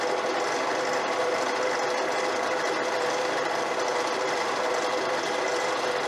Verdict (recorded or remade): recorded